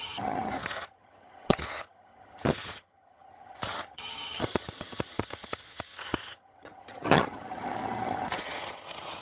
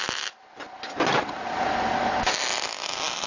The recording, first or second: second